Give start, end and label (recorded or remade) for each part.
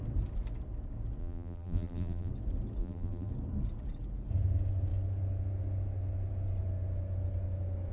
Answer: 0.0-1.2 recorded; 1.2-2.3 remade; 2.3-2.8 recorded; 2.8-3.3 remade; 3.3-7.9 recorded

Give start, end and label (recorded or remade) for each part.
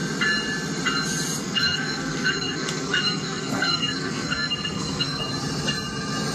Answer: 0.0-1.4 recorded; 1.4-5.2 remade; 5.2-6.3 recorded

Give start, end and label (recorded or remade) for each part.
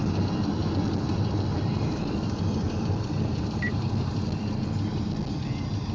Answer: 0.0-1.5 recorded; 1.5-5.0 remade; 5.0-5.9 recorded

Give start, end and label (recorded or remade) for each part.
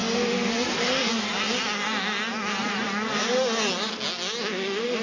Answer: 0.0-2.6 recorded; 2.6-3.1 remade; 3.1-5.0 recorded